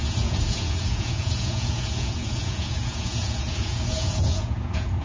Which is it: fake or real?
fake